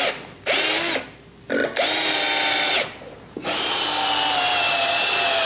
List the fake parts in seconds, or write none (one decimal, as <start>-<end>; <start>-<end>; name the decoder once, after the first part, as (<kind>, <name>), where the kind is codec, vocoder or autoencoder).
none